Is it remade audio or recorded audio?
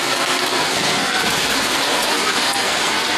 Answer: remade